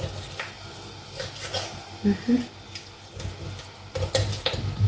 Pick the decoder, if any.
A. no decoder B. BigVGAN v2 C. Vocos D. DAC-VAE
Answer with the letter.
A